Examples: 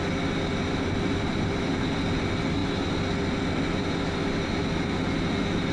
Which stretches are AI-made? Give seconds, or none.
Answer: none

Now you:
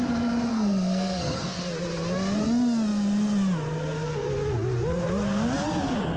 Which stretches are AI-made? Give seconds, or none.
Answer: 0.5-1.6 (codec, SNAC)